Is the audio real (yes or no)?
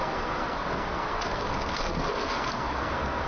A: no